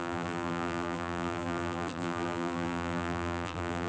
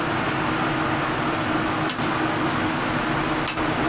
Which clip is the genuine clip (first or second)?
second